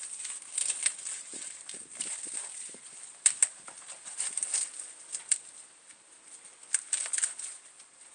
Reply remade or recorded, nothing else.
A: recorded